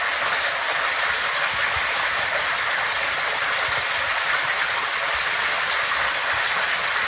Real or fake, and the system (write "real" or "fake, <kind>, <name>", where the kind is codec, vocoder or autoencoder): real